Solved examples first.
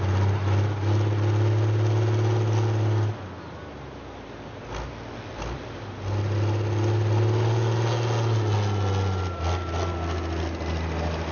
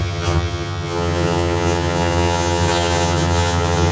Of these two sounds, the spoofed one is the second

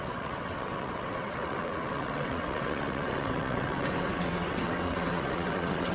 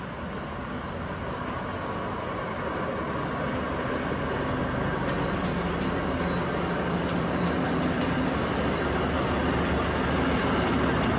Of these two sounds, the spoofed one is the first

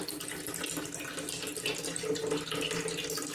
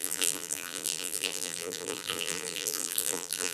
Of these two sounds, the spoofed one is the second